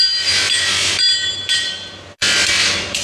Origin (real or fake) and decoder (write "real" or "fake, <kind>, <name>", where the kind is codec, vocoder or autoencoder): real